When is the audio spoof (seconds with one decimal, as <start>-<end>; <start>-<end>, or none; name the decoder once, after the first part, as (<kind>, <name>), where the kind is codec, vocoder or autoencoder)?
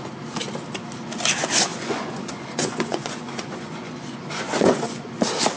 1.7-5.1 (vocoder, Vocos)